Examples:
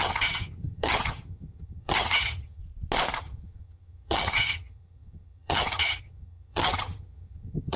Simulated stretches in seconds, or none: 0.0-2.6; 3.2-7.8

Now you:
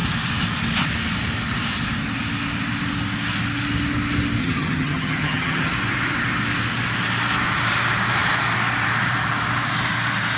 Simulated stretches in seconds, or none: 4.4-5.7